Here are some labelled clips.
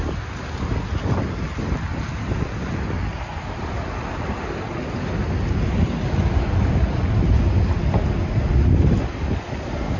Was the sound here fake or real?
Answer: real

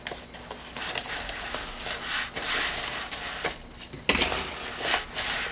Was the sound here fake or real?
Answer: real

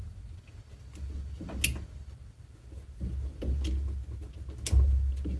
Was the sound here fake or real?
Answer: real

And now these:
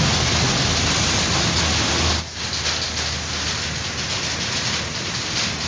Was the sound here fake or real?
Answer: real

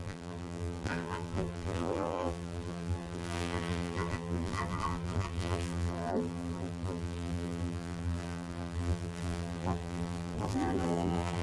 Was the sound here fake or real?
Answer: fake